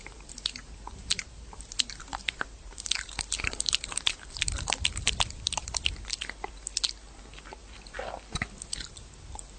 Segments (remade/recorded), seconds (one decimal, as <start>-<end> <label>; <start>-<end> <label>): 0.0-5.1 remade; 5.1-9.6 recorded